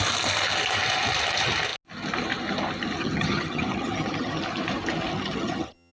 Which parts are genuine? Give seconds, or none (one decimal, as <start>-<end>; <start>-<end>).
0.0-3.0; 4.4-5.1